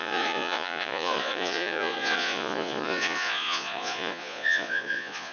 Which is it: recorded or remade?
remade